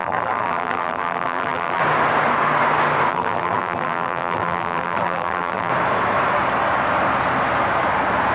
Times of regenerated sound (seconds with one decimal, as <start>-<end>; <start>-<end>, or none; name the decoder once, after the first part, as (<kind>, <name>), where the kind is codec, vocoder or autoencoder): 0.0-1.8 (vocoder, BigVGAN v2); 3.1-5.7